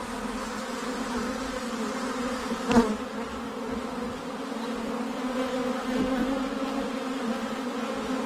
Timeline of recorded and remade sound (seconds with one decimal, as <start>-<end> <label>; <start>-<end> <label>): 0.0-8.3 recorded